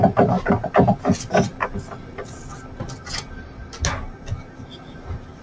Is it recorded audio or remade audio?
recorded